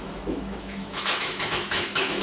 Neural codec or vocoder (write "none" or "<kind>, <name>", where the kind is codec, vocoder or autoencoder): autoencoder, DAC-VAE